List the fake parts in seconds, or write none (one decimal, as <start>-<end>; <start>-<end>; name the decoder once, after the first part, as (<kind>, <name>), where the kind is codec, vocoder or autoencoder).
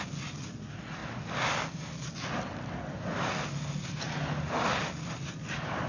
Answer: none